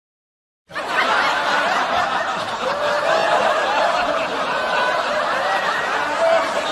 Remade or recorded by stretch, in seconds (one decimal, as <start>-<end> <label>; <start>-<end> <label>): 0.0-6.7 recorded